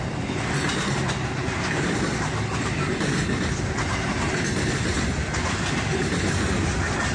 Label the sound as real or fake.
real